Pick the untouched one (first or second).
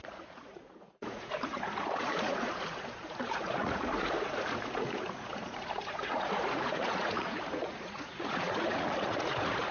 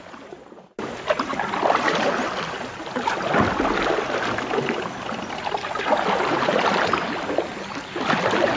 second